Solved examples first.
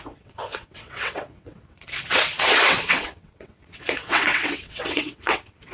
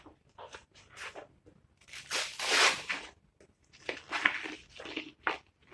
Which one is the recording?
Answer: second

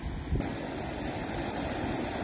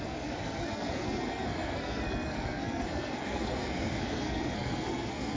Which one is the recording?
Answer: first